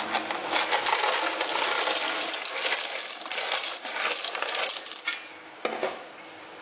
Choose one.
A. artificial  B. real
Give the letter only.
B